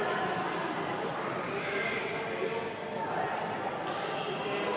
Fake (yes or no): no